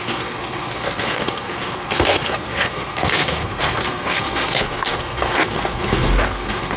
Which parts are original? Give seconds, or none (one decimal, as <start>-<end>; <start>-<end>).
none